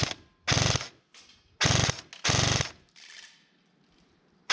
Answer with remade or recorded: recorded